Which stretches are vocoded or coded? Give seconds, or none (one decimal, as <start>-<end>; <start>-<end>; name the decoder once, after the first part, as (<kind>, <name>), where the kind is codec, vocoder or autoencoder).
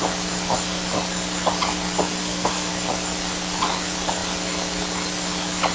2.2-2.7 (codec, SNAC)